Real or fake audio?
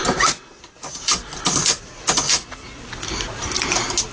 real